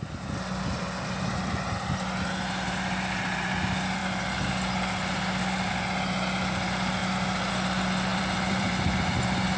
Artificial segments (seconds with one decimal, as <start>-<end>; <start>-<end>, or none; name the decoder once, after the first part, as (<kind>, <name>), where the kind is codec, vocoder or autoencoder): 8.1-8.7 (vocoder, BigVGAN v2)